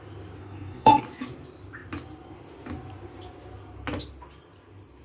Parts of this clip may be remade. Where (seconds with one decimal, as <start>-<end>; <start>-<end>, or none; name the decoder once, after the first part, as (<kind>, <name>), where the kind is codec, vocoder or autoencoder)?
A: 0.4-1.0 (codec, DAC)